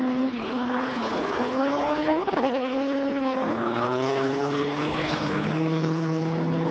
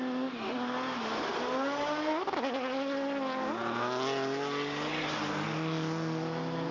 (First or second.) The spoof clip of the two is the first